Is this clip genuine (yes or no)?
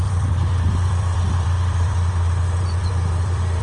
no